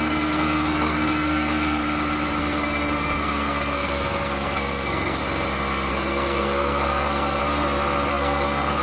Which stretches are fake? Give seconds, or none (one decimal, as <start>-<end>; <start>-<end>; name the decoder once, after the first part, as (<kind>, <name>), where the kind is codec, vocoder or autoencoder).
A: 0.0-1.8 (codec, SNAC); 2.4-5.2; 5.9-7.4; 8.1-8.8